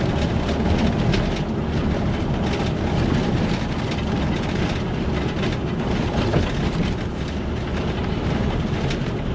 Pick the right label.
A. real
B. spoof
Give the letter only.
A